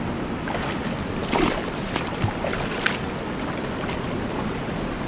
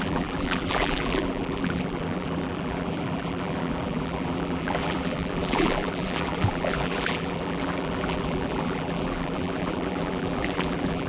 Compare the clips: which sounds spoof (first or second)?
second